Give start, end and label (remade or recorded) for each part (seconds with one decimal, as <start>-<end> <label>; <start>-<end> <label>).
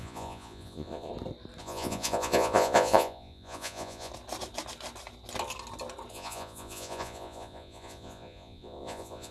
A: 0.0-1.1 remade; 1.1-1.6 recorded; 1.6-4.1 remade; 4.1-6.1 recorded; 6.1-9.3 remade